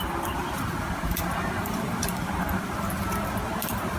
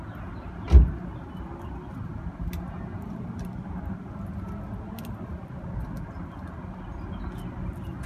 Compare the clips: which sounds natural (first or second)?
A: second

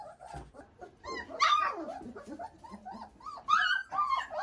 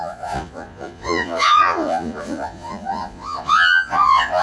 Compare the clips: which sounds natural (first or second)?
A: first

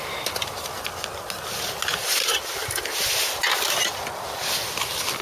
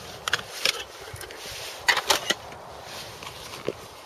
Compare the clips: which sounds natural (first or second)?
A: first